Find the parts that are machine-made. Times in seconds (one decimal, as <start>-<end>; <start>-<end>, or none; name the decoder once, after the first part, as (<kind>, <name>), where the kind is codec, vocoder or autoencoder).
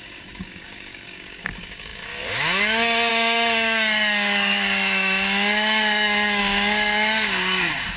0.0-8.0 (codec, DAC)